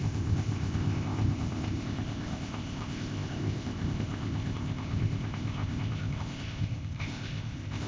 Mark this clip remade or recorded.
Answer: remade